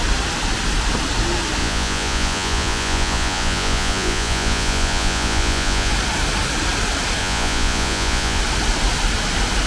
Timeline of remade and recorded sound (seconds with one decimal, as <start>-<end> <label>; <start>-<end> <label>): 0.0-1.6 recorded; 1.6-5.9 remade; 5.9-7.2 recorded; 7.2-8.4 remade; 8.4-9.7 recorded